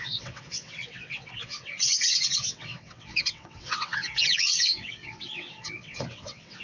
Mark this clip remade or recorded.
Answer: remade